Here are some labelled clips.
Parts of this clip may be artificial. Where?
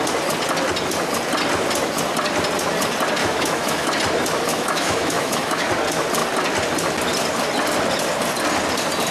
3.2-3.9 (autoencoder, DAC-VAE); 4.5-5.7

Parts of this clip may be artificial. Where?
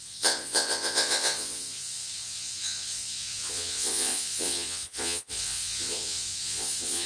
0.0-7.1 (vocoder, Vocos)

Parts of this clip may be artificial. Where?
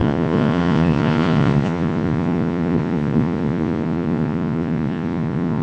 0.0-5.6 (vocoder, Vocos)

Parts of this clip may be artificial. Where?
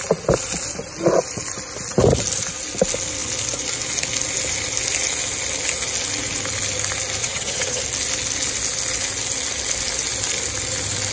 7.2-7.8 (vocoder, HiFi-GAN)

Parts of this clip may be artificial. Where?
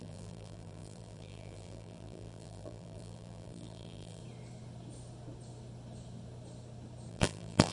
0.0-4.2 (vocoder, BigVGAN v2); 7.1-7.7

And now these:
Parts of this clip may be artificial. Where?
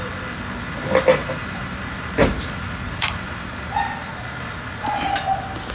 1.2-1.8 (vocoder, BigVGAN v2); 2.2-4.1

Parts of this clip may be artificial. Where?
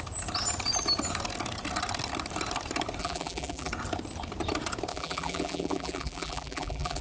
3.0-3.7 (vocoder, BigVGAN v2); 4.9-7.0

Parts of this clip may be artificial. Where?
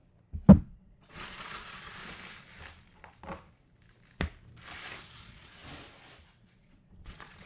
0.6-2.0 (vocoder, Vocos); 5.0-5.6; 6.6-7.5